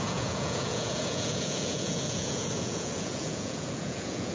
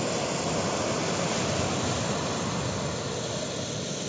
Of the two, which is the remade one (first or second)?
first